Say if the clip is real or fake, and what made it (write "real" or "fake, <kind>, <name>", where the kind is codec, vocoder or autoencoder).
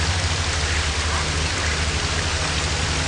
real